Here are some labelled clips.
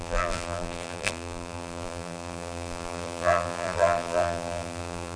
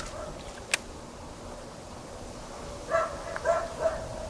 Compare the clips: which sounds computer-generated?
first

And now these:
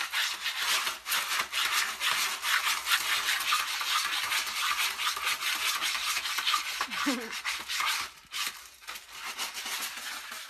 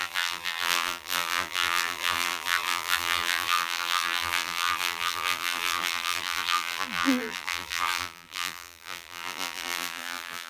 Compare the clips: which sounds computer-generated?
second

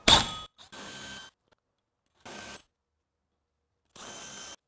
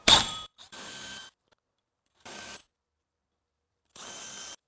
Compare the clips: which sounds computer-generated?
second